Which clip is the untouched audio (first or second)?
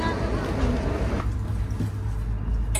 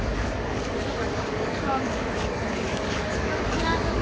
first